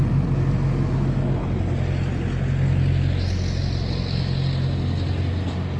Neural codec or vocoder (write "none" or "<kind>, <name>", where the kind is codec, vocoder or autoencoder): none